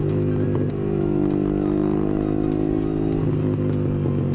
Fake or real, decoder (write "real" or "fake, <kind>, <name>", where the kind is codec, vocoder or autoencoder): real